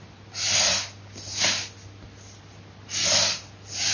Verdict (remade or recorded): recorded